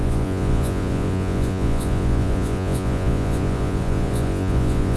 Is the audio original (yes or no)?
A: no